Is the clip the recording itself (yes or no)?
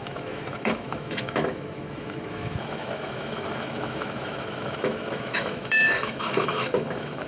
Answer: no